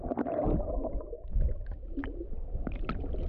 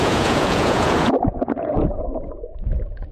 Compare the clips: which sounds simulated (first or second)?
second